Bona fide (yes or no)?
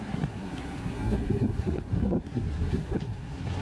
no